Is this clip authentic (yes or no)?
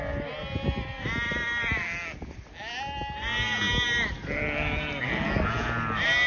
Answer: yes